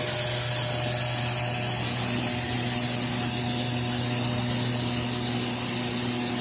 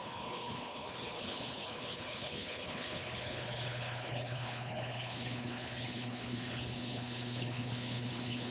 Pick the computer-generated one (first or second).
second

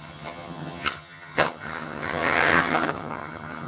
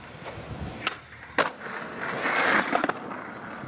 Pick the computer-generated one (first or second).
first